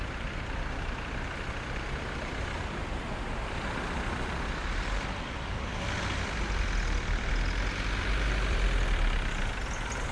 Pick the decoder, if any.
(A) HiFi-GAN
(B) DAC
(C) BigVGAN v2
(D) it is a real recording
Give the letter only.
C